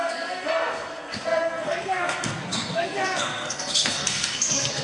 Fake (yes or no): yes